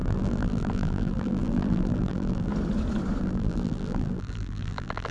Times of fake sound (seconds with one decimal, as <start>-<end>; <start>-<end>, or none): 0.0-2.5; 3.2-5.1